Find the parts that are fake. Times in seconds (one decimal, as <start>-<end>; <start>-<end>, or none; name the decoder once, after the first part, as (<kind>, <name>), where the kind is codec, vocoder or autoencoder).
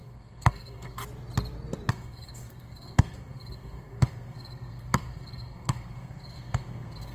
0.0-1.0 (codec, SNAC); 1.9-7.1